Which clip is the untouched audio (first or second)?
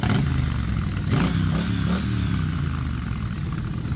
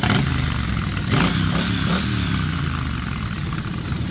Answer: first